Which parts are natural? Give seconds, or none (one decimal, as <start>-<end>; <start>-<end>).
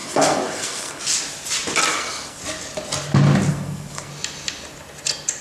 1.0-1.9; 2.4-3.5; 4.1-5.4